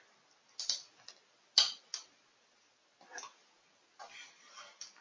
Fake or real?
real